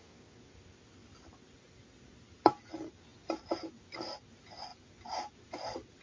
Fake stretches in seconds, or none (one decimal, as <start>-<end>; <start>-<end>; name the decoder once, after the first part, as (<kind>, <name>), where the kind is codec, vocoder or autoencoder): none